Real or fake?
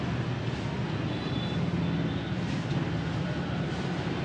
real